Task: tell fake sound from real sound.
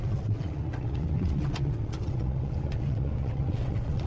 fake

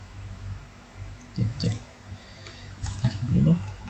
fake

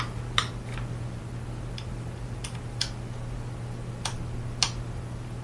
real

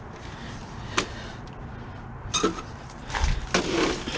real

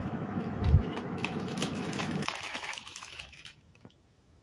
fake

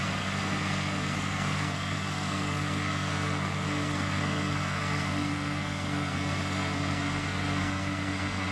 fake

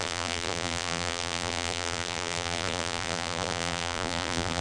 fake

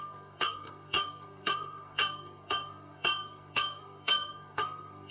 fake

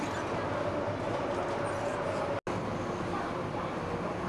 real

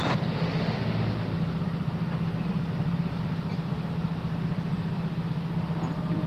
real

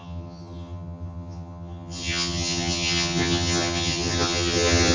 fake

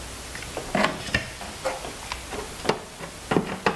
real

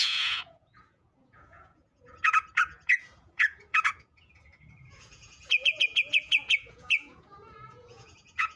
fake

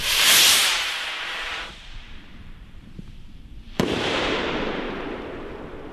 fake